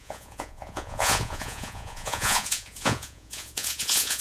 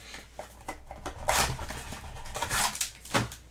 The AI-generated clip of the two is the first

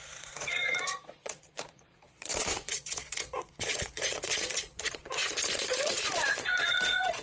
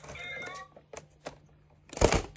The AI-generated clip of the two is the first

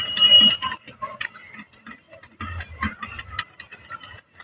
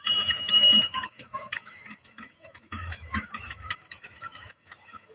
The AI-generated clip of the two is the second